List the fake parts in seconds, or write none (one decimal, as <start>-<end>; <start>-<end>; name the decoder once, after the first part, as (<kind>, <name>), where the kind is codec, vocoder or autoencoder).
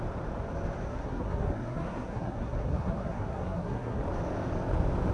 0.9-4.0 (codec, SNAC)